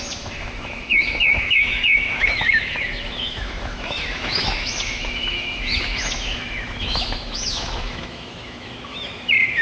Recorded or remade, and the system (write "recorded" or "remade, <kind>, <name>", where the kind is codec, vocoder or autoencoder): remade, autoencoder, DAC-VAE